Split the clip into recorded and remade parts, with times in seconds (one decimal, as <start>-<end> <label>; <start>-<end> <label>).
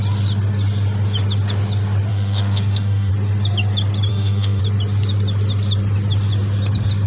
0.0-2.1 recorded; 2.1-3.1 remade; 3.1-4.1 recorded; 4.1-4.6 remade; 4.6-7.1 recorded